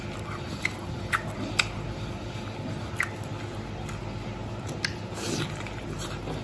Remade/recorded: recorded